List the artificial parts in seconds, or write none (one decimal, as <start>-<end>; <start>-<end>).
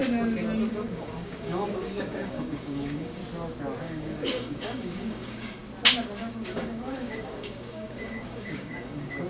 0.7-3.2; 3.8-5.6; 6.3-9.3